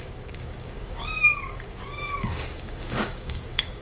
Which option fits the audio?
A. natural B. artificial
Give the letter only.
B